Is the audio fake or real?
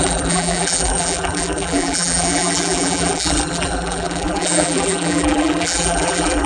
fake